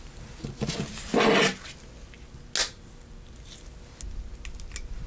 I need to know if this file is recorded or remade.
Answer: recorded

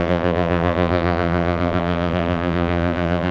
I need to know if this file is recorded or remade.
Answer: remade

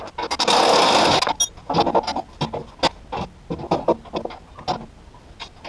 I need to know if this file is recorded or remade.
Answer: recorded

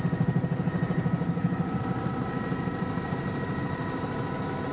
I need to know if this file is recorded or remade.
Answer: remade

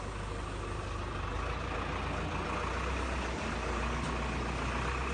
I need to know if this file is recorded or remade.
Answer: recorded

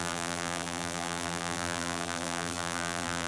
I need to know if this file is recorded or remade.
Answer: remade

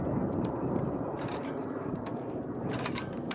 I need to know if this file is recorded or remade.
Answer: remade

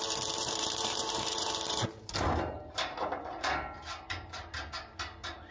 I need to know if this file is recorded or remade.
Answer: remade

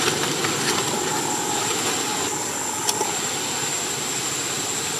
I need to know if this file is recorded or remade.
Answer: recorded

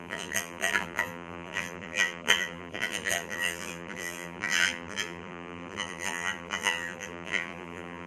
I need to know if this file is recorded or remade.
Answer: remade